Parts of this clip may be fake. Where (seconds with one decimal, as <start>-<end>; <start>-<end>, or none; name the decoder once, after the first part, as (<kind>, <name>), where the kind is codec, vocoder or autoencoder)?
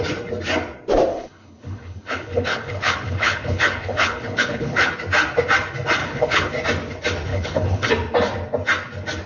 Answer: 1.1-4.9 (codec, HILCodec); 6.0-6.5; 7.3-7.9